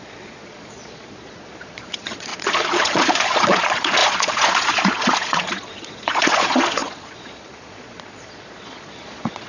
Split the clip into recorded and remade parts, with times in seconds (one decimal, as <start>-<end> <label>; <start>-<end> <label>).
0.0-9.5 remade